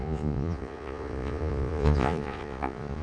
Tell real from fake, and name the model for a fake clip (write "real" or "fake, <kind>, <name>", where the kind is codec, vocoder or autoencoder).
fake, vocoder, Vocos